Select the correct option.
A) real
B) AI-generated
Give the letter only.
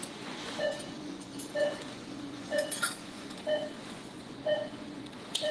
B